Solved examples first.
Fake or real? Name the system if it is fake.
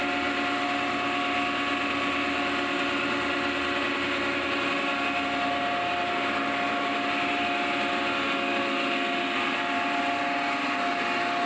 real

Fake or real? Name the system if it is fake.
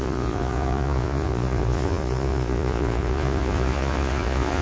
fake, vocoder, Vocos